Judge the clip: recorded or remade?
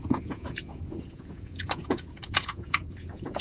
remade